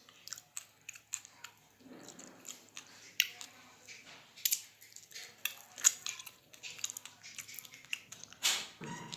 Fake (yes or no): no